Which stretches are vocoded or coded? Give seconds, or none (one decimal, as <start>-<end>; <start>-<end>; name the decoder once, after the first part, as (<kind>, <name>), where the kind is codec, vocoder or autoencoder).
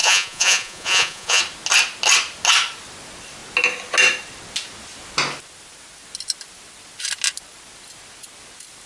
0.0-1.4 (vocoder, Vocos)